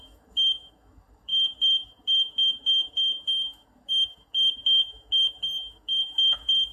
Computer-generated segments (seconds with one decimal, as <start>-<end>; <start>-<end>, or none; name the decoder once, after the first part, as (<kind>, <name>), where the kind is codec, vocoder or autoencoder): 0.0-6.7 (autoencoder, DAC-VAE)